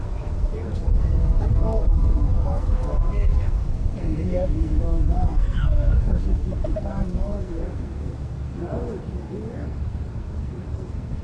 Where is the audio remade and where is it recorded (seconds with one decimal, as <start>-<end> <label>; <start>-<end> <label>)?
0.0-11.2 remade